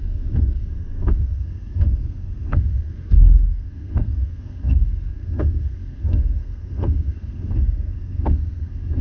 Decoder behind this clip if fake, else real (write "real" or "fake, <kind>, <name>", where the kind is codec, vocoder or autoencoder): fake, codec, SNAC